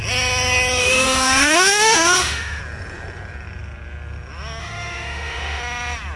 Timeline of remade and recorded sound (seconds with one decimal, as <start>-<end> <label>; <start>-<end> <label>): 0.0-0.8 recorded; 0.8-2.6 remade; 2.6-4.6 recorded; 4.6-5.6 remade; 5.6-6.2 recorded